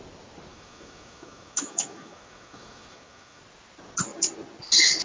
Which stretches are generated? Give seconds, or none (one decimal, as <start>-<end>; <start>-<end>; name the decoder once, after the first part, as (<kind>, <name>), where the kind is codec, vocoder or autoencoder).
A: 0.5-3.4 (autoencoder, DAC-VAE)